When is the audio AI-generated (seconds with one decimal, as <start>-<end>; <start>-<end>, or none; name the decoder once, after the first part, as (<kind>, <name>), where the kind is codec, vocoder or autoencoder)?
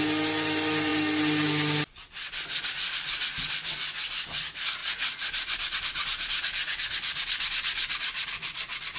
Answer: none